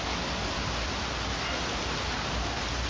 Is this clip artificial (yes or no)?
no